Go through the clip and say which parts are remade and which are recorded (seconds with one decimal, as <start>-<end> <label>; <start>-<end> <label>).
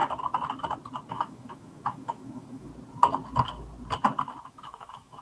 0.0-1.1 recorded; 1.1-2.7 remade; 2.7-4.5 recorded; 4.5-5.2 remade